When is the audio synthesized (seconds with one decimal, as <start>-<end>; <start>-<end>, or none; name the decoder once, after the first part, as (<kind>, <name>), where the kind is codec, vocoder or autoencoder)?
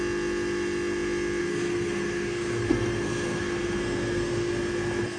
1.4-4.5 (codec, SNAC)